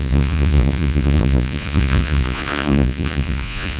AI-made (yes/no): yes